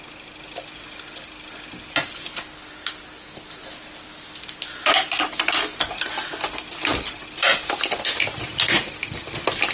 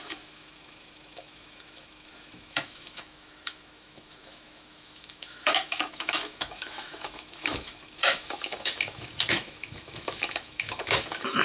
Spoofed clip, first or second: second